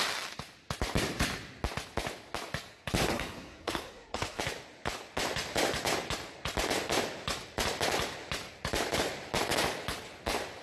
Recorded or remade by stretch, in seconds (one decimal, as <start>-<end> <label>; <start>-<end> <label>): 0.0-3.0 recorded; 3.0-4.4 remade; 4.4-10.6 recorded